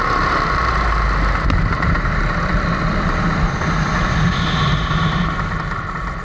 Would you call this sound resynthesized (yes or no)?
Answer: no